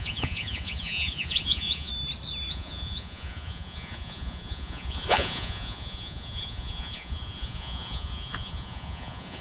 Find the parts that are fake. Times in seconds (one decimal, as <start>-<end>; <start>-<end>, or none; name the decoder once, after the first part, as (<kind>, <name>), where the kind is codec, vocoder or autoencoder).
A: 0.0-1.9 (vocoder, Vocos); 2.5-9.4